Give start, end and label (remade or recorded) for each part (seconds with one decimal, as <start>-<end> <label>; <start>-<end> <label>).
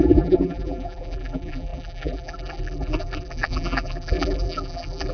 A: 0.0-5.1 remade